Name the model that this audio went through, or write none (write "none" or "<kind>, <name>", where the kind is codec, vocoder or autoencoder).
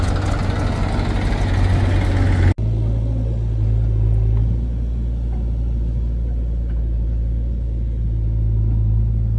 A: none